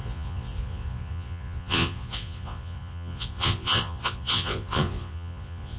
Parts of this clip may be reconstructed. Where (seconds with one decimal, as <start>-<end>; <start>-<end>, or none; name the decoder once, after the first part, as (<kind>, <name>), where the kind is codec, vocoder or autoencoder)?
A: 0.0-5.8 (vocoder, Vocos)

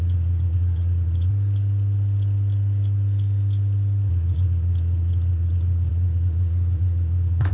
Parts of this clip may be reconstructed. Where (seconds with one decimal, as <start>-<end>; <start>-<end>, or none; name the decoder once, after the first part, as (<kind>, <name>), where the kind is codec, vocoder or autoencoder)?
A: 0.0-1.3 (vocoder, Vocos); 4.1-7.5

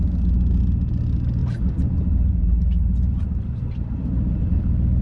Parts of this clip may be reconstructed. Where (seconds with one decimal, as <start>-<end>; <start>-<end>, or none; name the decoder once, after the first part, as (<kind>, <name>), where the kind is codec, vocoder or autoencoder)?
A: 1.4-4.4 (vocoder, BigVGAN v2)

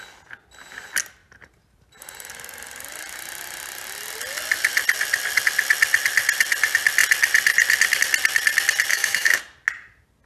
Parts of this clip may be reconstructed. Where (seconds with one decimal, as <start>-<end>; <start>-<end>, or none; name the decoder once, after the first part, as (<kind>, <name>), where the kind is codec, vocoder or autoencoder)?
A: 8.9-9.4 (autoencoder, DAC-VAE)

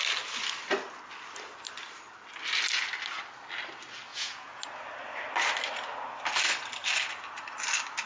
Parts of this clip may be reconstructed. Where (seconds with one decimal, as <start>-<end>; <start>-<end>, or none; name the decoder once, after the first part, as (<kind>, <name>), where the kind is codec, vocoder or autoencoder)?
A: 4.1-4.6 (vocoder, Vocos)

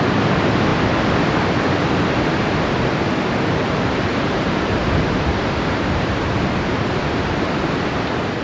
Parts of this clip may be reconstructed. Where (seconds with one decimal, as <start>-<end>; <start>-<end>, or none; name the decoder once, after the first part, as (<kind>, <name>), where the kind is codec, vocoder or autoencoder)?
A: 4.1-7.5 (vocoder, BigVGAN v2)

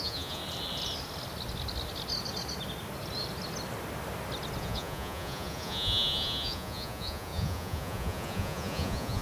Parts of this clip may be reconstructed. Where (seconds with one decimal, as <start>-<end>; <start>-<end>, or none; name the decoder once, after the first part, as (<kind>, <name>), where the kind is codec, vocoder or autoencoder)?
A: 0.0-0.4 (vocoder, Vocos); 4.6-9.2

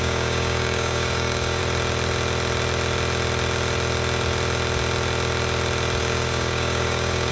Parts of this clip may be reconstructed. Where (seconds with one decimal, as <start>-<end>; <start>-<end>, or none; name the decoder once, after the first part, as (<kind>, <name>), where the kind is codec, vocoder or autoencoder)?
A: 0.0-1.6 (codec, DAC); 6.0-7.3